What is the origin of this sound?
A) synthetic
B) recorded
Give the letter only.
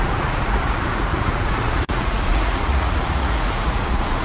A